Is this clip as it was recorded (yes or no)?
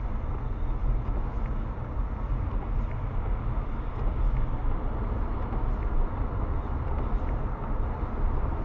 yes